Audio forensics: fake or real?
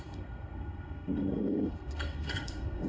fake